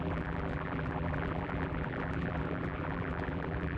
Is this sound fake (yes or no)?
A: yes